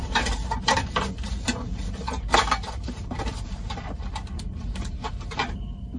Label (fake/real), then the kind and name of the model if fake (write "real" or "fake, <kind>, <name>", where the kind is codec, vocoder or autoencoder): fake, vocoder, BigVGAN v2